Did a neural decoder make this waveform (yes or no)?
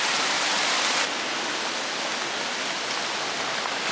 no